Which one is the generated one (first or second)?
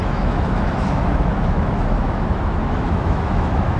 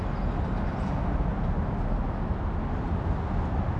first